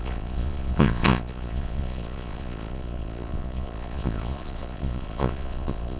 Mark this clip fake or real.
fake